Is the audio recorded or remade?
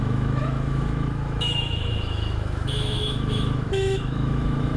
remade